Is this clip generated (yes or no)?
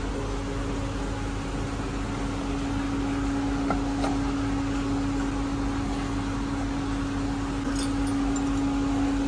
no